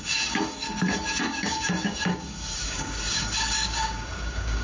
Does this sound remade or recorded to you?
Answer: remade